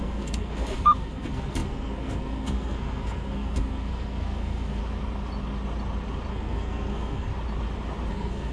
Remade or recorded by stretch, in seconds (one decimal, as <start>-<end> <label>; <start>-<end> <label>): 0.0-4.8 remade; 4.8-6.3 recorded; 6.3-7.3 remade; 7.3-8.1 recorded; 8.1-8.5 remade